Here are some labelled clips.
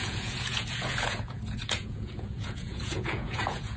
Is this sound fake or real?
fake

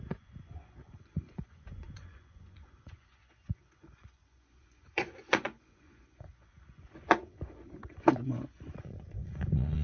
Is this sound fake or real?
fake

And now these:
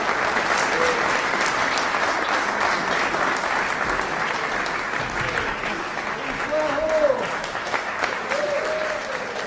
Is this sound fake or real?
real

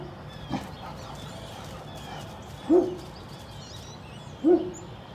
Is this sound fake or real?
real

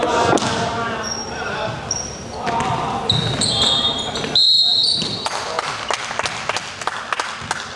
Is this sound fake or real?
real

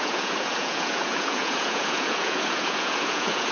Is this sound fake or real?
fake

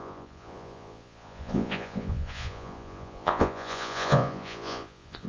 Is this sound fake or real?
fake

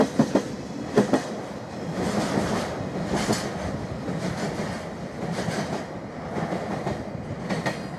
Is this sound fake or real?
real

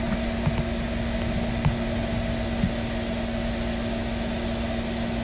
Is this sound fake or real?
real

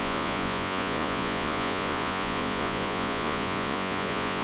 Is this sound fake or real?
fake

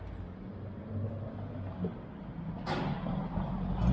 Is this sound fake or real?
real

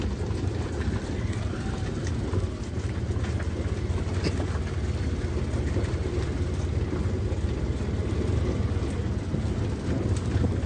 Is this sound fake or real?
real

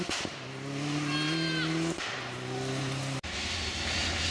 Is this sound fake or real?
real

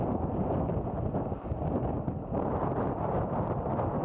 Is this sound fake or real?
real